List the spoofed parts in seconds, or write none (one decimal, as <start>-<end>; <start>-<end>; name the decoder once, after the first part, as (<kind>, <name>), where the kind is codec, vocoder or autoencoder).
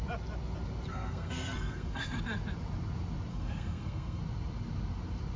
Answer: 0.9-2.2 (codec, SNAC); 3.3-4.2